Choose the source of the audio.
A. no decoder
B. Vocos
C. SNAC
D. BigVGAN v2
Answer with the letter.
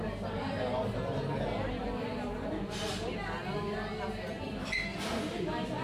A